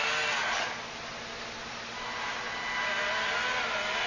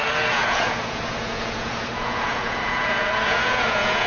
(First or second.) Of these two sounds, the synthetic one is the second